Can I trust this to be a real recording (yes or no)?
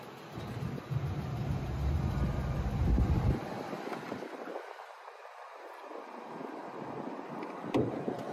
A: yes